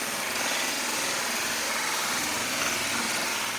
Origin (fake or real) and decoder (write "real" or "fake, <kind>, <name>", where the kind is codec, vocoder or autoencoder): real